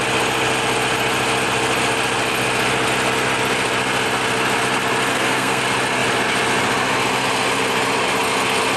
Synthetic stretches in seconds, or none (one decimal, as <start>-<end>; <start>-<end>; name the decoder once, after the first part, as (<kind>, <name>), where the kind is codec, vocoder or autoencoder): 5.1-5.6 (codec, SNAC)